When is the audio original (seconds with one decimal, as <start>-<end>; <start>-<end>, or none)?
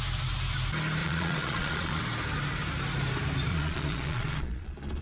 0.0-1.0; 2.0-3.5